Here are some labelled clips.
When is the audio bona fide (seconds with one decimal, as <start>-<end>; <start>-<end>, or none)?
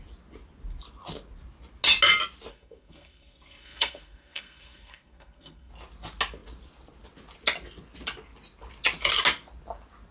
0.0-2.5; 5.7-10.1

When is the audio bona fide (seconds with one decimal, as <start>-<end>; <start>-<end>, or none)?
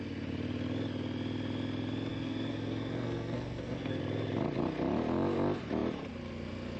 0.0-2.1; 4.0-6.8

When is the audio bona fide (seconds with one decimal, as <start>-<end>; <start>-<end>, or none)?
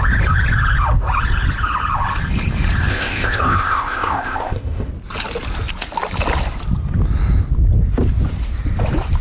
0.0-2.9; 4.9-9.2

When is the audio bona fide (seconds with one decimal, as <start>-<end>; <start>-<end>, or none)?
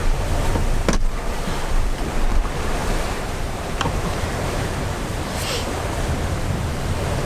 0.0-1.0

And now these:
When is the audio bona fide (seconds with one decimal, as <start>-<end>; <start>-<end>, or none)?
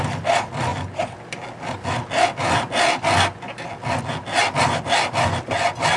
0.0-6.0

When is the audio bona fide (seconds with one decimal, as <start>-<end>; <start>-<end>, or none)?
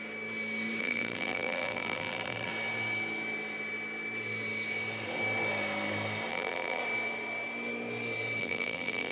0.0-0.8; 2.5-6.3; 6.8-8.4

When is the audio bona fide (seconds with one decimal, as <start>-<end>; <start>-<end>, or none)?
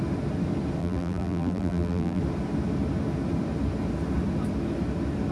0.0-0.8; 2.2-5.3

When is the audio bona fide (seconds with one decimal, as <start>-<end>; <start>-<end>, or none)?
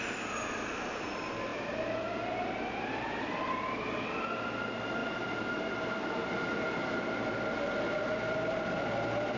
0.0-9.4